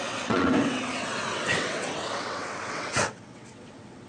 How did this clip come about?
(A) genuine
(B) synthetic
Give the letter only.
B